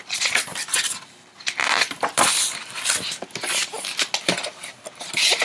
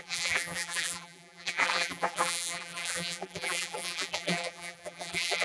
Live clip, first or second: first